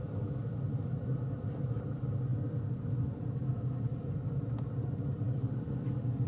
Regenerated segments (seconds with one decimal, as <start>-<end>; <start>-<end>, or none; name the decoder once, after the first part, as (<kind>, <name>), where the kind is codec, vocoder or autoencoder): 2.3-6.3 (vocoder, BigVGAN v2)